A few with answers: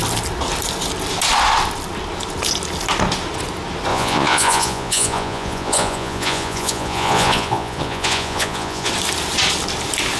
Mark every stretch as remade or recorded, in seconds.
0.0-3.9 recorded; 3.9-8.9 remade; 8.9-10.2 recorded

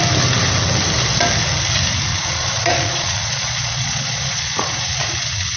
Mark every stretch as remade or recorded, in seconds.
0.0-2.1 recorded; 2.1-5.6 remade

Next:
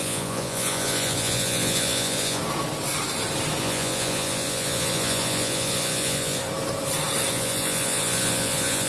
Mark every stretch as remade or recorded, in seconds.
0.0-2.4 remade; 2.4-3.6 recorded; 3.6-6.4 remade; 6.4-7.3 recorded; 7.3-8.9 remade

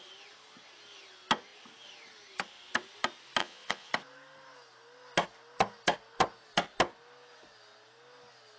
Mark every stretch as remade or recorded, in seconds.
0.0-3.4 recorded; 3.4-3.9 remade; 3.9-8.6 recorded